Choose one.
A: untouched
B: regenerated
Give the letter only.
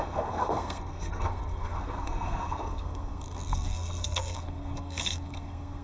B